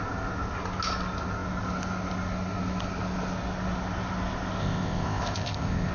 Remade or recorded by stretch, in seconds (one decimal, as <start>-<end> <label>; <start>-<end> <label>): 0.0-4.6 recorded; 4.6-5.9 remade